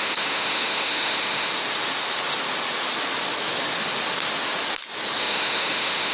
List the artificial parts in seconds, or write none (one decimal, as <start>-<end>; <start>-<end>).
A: 0.0-1.5; 5.2-6.1